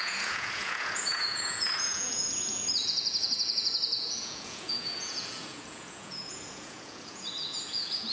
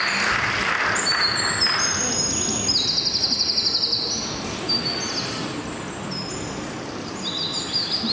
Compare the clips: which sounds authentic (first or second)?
second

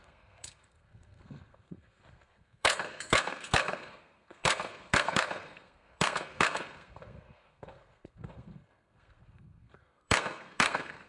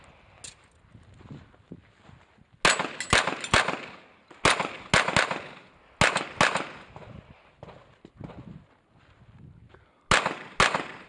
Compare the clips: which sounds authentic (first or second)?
second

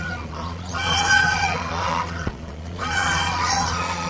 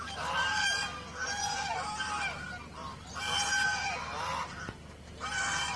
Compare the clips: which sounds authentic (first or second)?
second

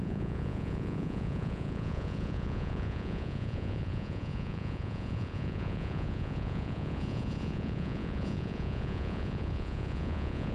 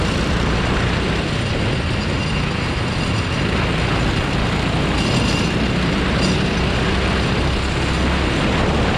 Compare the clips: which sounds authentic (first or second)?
second